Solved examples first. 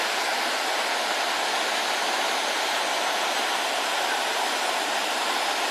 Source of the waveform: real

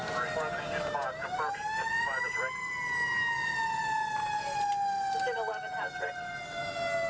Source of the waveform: real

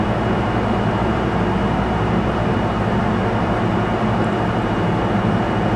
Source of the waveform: fake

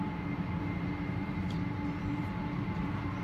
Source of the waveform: real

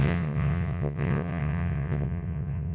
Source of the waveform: fake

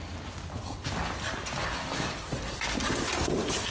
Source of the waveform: real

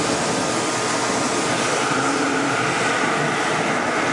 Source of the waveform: real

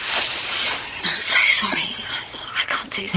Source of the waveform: fake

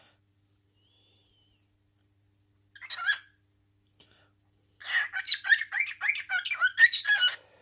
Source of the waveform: real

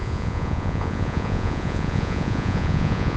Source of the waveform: fake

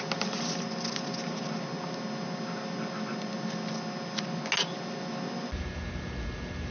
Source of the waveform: real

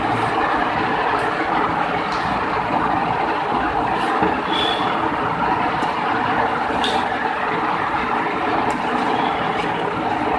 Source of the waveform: real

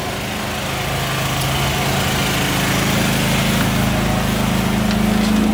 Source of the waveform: real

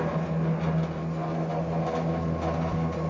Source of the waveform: real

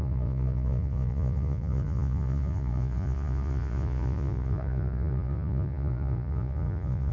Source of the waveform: fake